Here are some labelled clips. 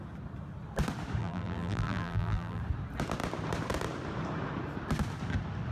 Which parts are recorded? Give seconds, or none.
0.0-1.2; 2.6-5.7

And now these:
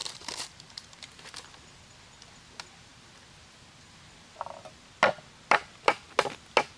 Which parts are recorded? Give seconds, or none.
1.3-6.8

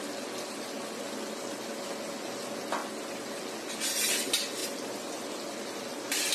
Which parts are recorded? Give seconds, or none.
0.0-6.3

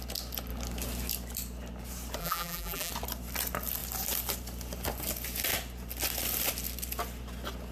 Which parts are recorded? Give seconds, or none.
0.0-2.2; 2.9-7.7

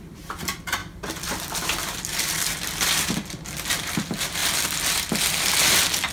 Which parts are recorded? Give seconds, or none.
4.4-5.4